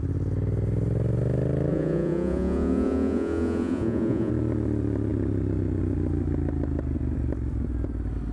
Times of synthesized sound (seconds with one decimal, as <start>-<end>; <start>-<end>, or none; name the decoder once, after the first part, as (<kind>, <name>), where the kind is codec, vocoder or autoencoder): 1.7-4.3 (vocoder, Vocos)

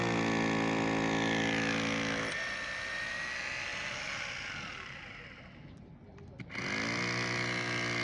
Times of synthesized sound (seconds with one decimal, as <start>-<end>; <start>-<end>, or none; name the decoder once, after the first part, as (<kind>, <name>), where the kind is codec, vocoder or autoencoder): none

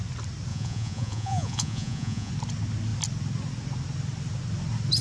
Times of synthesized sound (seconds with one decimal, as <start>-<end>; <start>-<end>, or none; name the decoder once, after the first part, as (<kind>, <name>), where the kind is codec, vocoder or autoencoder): 0.5-2.3 (vocoder, Vocos)

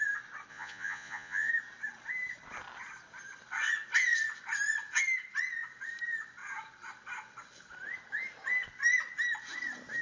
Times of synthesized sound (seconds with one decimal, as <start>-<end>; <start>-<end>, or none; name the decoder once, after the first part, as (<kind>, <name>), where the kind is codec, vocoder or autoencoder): 0.5-1.5 (vocoder, Vocos)

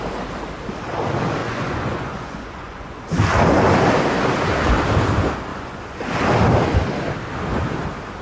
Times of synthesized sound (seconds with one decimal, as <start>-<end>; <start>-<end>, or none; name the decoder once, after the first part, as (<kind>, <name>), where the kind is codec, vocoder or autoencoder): 1.4-3.0 (vocoder, Vocos); 5.5-6.0